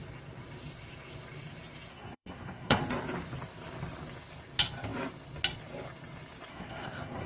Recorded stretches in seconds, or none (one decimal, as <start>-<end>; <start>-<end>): 0.0-1.9; 2.8-6.5